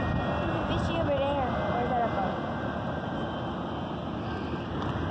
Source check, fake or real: real